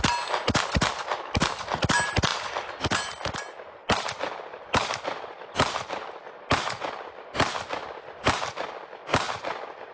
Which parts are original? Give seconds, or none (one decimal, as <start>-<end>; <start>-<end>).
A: 0.0-9.9